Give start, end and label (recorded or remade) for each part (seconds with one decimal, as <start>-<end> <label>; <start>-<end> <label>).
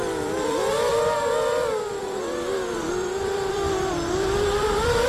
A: 0.0-5.1 remade